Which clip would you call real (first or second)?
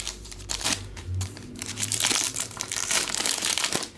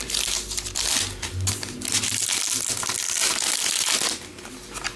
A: second